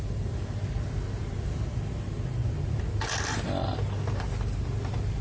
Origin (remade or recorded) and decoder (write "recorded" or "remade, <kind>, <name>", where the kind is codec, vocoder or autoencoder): recorded